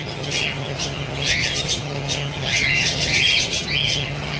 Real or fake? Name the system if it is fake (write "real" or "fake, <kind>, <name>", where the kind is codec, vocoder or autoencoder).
fake, vocoder, HiFi-GAN